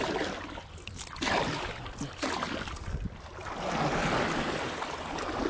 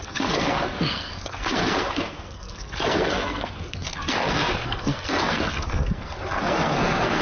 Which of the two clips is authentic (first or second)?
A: first